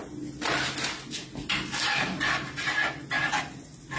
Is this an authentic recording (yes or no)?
yes